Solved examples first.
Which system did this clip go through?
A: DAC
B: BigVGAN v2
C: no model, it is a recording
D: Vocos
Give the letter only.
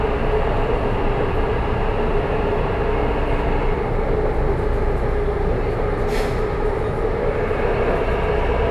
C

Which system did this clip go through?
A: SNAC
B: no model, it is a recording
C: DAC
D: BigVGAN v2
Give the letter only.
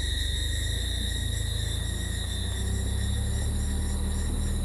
B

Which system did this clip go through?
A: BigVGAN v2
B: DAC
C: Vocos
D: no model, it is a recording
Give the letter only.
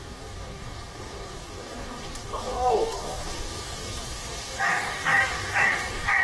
B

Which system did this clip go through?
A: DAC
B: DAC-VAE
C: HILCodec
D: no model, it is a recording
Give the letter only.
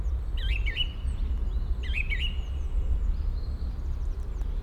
D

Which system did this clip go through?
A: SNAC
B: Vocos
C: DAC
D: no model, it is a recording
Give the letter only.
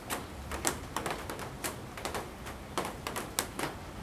D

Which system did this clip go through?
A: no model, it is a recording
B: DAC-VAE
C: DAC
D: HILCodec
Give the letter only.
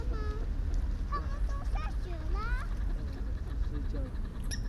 A